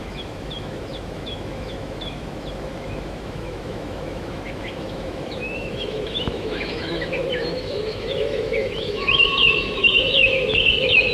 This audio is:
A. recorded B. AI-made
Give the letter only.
B